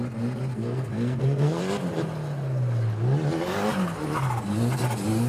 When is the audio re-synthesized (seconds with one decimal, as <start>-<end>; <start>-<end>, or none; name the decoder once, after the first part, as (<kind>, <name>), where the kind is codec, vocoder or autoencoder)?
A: 0.5-1.6 (codec, SNAC)